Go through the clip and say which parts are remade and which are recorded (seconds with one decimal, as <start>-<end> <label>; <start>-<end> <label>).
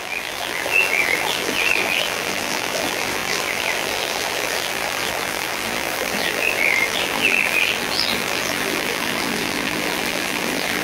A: 0.0-10.8 remade